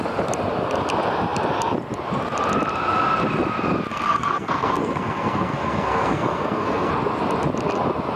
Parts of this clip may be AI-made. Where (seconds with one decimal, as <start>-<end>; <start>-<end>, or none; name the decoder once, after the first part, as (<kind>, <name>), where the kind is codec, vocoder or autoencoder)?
3.9-6.9 (codec, SNAC)